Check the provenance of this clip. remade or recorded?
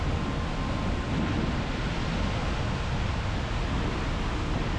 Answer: recorded